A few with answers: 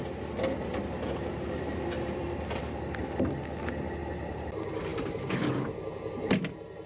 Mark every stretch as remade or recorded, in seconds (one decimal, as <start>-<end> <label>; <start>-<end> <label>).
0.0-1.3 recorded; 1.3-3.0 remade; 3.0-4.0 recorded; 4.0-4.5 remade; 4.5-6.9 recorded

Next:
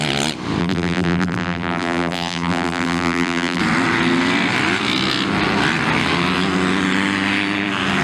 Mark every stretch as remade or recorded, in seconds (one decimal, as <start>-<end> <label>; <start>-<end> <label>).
0.0-0.6 recorded; 0.6-3.6 remade; 3.6-8.0 recorded

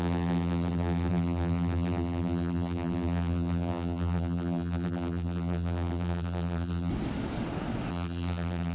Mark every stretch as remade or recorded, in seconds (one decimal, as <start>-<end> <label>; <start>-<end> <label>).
0.0-6.9 remade; 6.9-7.9 recorded; 7.9-8.7 remade

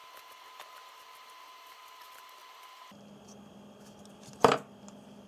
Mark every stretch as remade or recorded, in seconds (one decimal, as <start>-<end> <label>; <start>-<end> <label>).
0.0-5.3 recorded

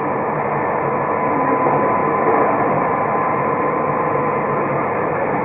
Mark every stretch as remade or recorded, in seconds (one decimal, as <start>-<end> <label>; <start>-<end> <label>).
0.0-2.0 recorded; 2.0-5.4 remade

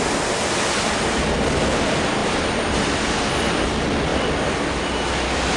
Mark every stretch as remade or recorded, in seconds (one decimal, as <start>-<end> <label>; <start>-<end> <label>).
0.0-2.2 recorded; 2.2-3.3 remade; 3.3-5.6 recorded

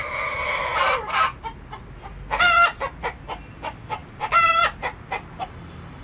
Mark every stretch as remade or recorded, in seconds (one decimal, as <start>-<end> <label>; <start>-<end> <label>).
0.0-4.0 recorded; 4.0-4.6 remade; 4.6-6.0 recorded

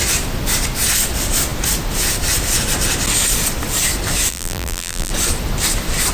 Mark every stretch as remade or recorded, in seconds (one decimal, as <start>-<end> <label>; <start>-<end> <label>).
0.0-4.3 recorded; 4.3-5.1 remade; 5.1-6.1 recorded